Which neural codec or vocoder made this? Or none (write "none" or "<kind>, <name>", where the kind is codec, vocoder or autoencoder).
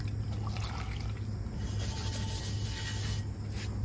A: none